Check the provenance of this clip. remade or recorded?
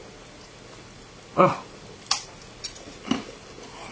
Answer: recorded